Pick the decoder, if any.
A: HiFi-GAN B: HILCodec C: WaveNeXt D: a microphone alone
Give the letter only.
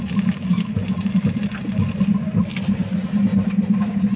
D